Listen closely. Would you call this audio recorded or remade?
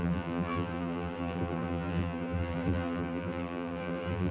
remade